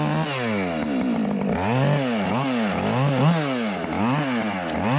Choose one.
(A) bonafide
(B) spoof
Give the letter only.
A